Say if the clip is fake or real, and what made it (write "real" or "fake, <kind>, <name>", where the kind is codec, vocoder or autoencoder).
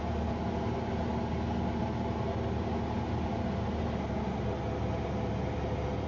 real